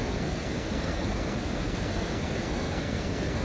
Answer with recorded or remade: remade